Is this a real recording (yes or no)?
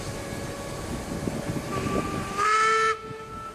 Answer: yes